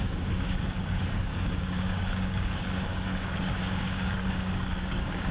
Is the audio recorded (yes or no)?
no